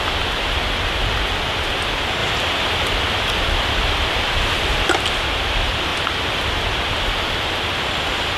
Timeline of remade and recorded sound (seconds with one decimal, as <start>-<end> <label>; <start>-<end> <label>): 0.0-2.2 recorded; 2.2-4.9 remade; 4.9-8.4 recorded